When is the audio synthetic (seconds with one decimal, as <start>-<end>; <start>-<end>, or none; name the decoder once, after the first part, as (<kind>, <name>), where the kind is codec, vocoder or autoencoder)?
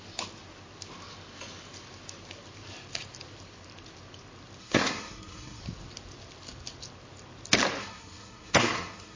4.6-5.6 (codec, SNAC); 7.8-9.2